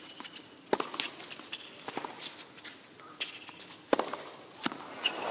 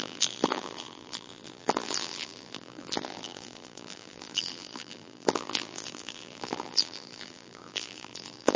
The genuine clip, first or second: first